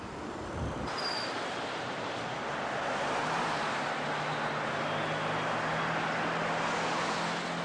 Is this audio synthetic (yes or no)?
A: no